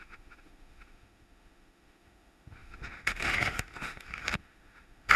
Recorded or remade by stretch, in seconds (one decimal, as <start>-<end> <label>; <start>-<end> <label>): 0.0-5.2 remade